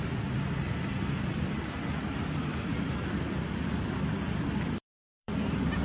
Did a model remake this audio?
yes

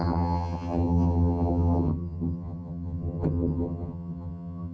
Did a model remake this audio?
yes